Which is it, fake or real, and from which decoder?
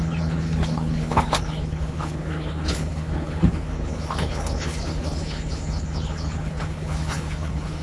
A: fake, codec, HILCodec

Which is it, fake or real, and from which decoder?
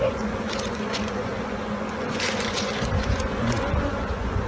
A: fake, vocoder, Vocos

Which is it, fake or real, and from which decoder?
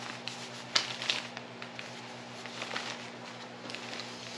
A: real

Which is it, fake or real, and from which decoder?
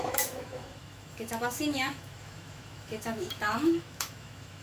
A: fake, autoencoder, DAC-VAE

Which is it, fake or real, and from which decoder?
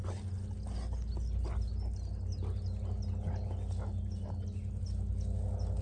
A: real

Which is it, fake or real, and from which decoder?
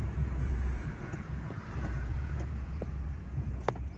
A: fake, vocoder, Vocos